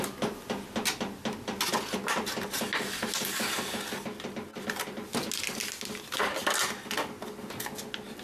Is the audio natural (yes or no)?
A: yes